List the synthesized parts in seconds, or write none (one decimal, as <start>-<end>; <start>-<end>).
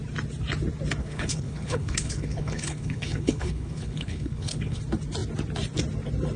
1.0-4.8